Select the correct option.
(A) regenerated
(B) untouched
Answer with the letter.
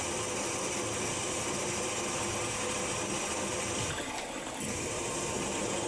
B